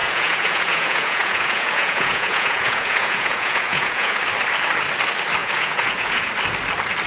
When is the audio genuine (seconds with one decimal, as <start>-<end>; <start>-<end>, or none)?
4.2-5.4; 6.3-7.1